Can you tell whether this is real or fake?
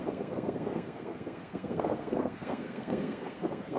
fake